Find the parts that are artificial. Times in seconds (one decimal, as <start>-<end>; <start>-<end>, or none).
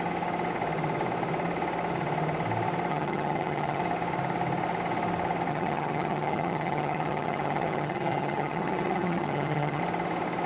2.9-3.8; 5.5-9.8